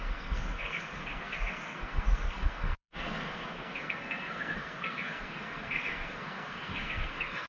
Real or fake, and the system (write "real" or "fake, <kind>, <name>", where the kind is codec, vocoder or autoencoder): fake, codec, SNAC